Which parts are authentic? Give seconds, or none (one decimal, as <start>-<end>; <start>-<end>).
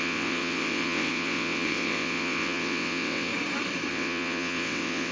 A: 3.3-3.9